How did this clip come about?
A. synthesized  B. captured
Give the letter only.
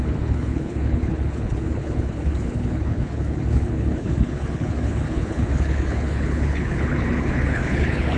A